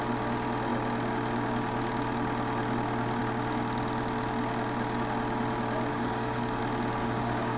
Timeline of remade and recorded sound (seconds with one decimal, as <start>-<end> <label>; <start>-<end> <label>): 0.0-5.9 recorded; 5.9-6.6 remade; 6.6-7.0 recorded; 7.0-7.6 remade